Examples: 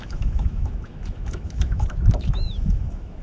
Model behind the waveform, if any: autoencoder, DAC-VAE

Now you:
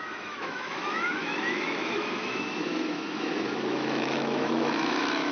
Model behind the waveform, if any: autoencoder, DAC-VAE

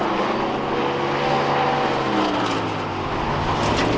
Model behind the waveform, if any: none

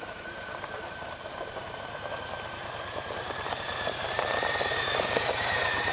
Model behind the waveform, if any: vocoder, BigVGAN v2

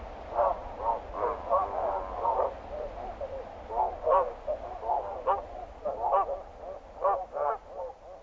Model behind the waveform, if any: none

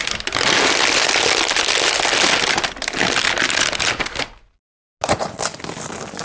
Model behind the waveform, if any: none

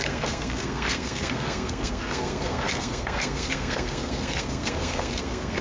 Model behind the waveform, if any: codec, SNAC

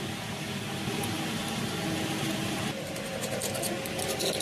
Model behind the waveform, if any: none